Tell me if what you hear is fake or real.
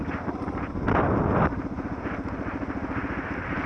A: real